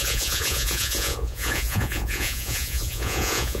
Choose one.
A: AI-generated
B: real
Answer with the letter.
A